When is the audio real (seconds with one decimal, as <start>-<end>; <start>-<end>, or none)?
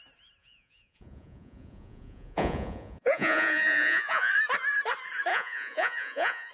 0.0-0.4; 4.3-5.3